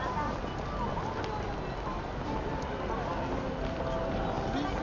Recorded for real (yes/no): yes